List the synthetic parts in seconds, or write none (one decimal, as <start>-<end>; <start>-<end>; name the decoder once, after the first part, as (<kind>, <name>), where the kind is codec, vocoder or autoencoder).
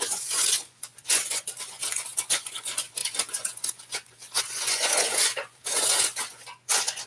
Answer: 0.0-7.1 (vocoder, Vocos)